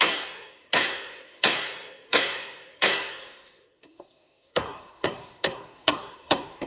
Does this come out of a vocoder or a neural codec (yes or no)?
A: yes